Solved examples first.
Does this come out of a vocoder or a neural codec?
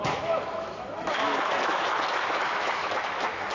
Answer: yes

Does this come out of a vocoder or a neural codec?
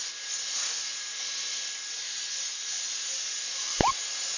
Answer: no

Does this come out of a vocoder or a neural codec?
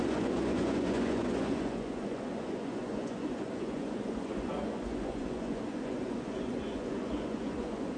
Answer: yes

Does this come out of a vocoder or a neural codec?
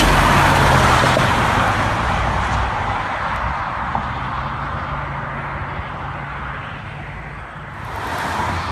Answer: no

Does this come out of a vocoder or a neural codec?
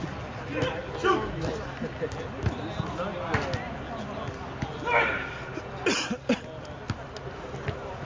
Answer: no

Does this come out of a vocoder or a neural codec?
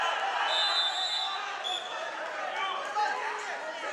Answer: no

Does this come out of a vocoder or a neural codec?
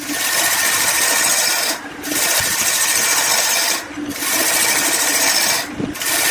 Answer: no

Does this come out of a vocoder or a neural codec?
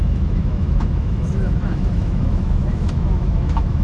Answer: yes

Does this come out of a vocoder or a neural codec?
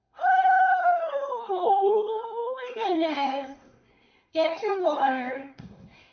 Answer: yes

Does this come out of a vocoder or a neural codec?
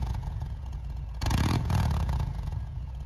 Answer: yes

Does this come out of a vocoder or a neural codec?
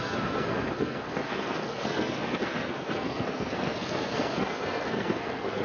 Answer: yes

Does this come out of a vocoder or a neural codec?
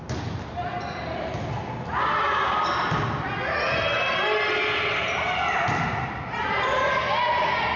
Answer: no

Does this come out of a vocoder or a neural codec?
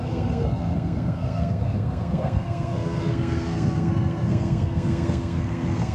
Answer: yes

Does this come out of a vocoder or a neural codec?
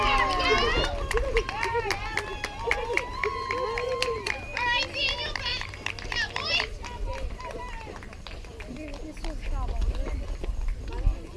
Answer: no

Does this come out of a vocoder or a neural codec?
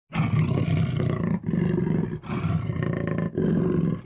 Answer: no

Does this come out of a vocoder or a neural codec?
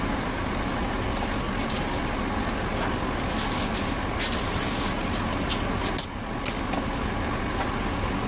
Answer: no